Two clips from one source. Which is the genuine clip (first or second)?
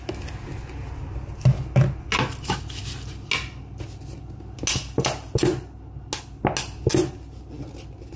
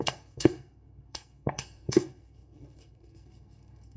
first